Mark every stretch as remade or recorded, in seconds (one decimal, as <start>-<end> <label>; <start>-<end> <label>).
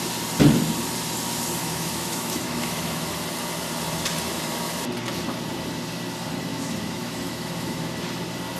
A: 0.0-1.6 recorded; 1.6-3.1 remade; 3.1-6.5 recorded; 6.5-7.9 remade; 7.9-8.6 recorded